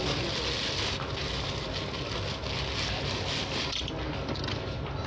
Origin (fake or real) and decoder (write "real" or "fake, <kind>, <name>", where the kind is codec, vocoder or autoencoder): real